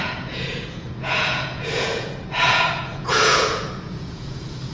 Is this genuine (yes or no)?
no